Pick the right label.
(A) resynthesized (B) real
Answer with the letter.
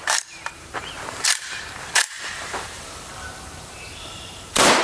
A